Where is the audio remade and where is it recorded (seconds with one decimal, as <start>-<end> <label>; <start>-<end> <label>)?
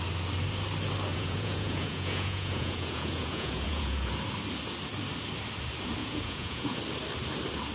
0.0-1.1 recorded; 1.1-4.1 remade; 4.1-6.0 recorded; 6.0-6.8 remade; 6.8-7.7 recorded